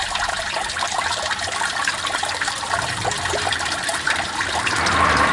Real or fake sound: fake